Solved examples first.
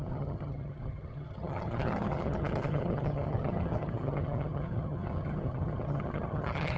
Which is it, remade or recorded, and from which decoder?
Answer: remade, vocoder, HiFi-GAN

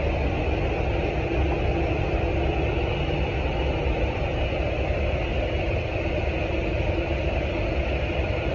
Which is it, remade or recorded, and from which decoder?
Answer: recorded